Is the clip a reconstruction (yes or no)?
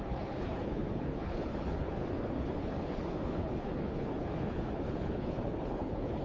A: yes